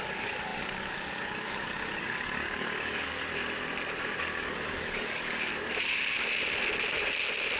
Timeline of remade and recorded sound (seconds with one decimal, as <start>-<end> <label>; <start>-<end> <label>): 0.0-3.3 remade; 3.3-4.2 recorded; 4.2-5.5 remade; 5.5-7.6 recorded